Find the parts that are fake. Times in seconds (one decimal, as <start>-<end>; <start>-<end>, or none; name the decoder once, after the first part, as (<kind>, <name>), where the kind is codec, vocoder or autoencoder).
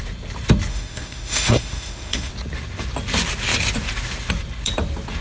0.7-2.3 (autoencoder, DAC-VAE)